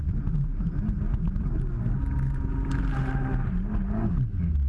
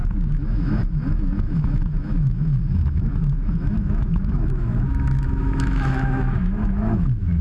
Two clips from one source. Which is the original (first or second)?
first